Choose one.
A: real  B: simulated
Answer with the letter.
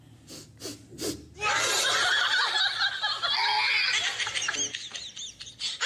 A